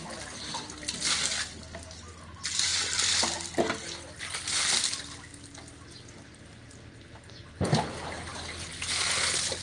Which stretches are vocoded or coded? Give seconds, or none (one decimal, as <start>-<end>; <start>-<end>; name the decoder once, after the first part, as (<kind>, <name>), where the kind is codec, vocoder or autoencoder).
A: none